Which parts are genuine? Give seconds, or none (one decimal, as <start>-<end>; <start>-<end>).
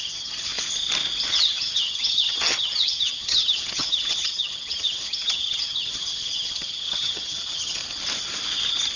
0.5-1.3; 7.8-9.0